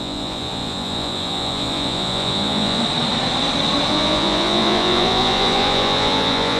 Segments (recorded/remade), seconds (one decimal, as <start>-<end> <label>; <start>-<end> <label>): 0.0-2.8 remade; 2.8-3.9 recorded; 3.9-6.6 remade